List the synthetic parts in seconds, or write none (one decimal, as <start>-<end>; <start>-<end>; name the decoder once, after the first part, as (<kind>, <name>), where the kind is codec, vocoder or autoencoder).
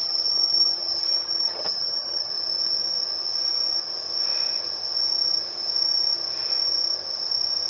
0.0-2.3 (vocoder, HiFi-GAN)